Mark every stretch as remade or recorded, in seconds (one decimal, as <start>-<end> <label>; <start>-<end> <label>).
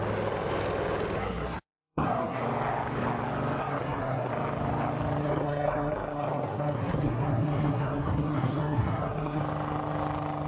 0.0-1.2 recorded; 1.2-2.4 remade; 2.4-3.6 recorded; 3.6-4.3 remade; 4.3-5.2 recorded; 5.2-9.4 remade; 9.4-10.5 recorded